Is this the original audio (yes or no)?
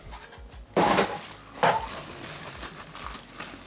yes